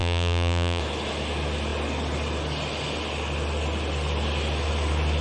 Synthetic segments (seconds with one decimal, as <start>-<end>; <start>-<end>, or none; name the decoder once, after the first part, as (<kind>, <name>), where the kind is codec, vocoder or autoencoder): 0.0-0.8 (vocoder, BigVGAN v2)

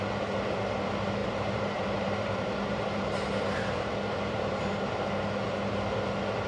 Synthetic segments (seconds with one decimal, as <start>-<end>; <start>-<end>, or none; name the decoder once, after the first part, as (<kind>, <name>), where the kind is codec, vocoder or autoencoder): 1.2-5.1 (vocoder, BigVGAN v2)